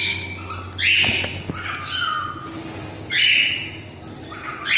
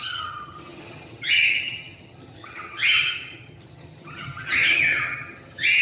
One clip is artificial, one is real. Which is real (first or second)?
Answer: first